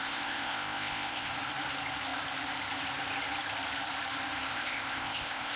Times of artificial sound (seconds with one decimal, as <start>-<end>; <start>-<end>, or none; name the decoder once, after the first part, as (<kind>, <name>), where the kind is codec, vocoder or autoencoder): 0.0-1.3 (codec, ZipCodec); 4.5-5.6